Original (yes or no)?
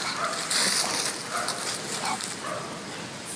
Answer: yes